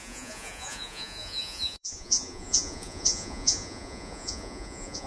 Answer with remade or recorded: remade